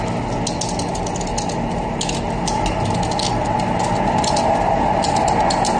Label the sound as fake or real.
real